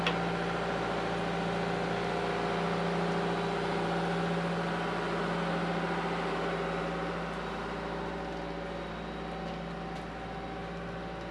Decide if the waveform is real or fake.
real